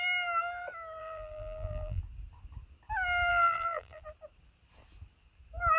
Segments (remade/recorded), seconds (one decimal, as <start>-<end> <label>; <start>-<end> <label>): 0.0-1.0 recorded; 1.0-2.0 remade; 2.0-3.3 recorded; 3.3-4.0 remade; 4.0-5.8 recorded